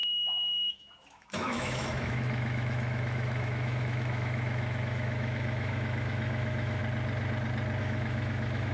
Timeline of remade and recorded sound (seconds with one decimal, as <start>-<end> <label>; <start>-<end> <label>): 0.0-6.8 remade; 6.8-7.8 recorded; 7.8-8.7 remade